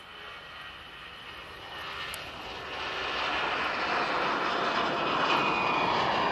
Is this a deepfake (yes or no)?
no